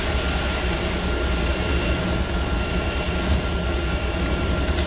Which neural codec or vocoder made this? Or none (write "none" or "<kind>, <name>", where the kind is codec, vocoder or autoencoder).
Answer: none